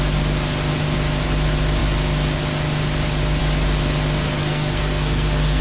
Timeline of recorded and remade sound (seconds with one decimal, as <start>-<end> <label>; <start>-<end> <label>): 0.0-4.4 recorded; 4.4-5.6 remade